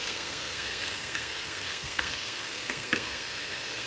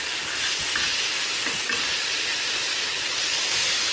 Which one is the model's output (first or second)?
first